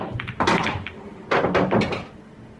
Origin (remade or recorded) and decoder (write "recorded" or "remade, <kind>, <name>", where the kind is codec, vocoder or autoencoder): recorded